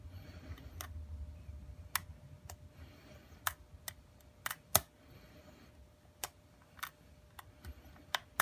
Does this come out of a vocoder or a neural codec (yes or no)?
no